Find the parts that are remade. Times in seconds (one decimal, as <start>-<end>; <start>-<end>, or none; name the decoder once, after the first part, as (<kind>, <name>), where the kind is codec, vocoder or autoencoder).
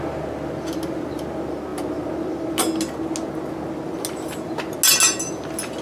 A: none